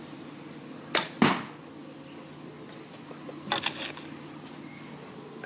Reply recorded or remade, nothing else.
recorded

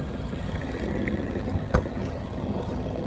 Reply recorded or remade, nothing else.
remade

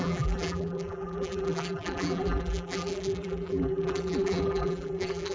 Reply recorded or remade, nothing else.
remade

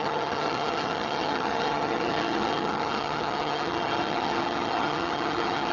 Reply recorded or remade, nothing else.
remade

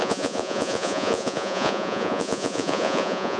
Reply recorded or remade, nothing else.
remade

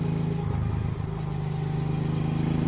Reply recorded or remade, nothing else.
recorded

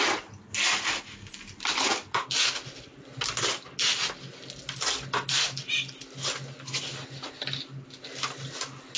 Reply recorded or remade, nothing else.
recorded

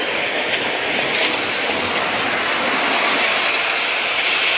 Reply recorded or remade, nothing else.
recorded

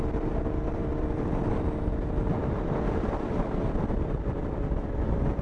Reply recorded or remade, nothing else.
remade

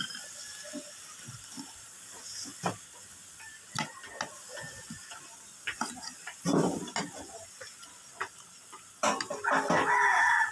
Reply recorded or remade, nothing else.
recorded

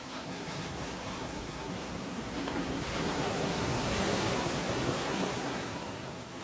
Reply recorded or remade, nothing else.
remade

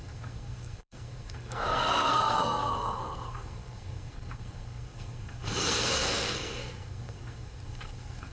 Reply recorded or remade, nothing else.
remade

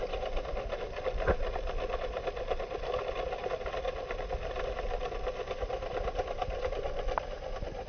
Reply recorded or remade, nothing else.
recorded